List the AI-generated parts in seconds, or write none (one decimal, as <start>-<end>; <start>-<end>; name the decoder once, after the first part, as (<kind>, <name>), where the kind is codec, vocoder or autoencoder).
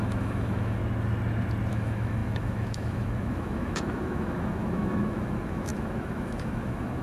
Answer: 0.0-0.8 (autoencoder, DAC-VAE); 1.7-7.0